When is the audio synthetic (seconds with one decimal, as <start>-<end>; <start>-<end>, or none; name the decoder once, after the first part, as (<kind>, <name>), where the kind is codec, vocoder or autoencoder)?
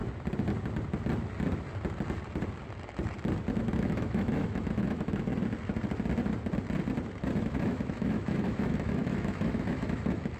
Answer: 3.6-5.3 (autoencoder, DAC-VAE); 7.4-10.4